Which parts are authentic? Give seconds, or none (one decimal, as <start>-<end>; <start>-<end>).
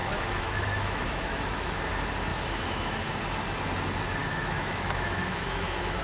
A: 1.8-2.3; 3.1-4.2